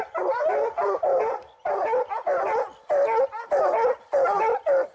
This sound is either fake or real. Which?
real